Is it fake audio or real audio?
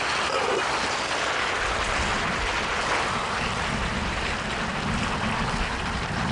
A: real